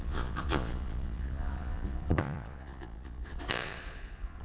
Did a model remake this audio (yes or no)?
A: yes